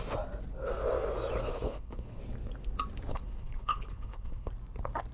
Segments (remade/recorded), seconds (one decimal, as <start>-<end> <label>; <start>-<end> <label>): 0.0-1.4 recorded; 1.4-2.2 remade; 2.2-3.1 recorded; 3.1-4.5 remade; 4.5-5.1 recorded